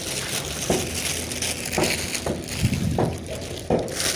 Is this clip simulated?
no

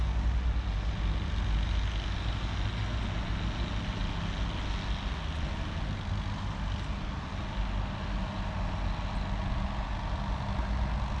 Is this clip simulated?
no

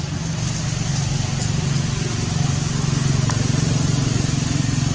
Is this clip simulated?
no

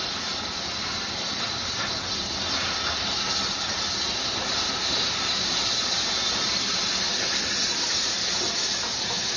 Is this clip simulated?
no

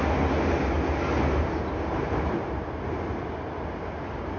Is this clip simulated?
no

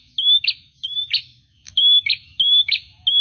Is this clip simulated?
yes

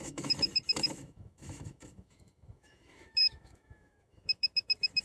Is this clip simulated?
yes